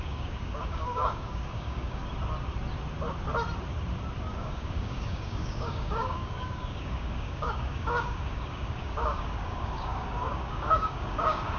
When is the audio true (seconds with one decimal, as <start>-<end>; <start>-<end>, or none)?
2.0-4.3